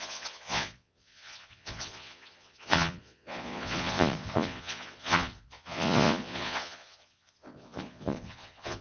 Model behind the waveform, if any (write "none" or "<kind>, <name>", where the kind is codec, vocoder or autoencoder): vocoder, Vocos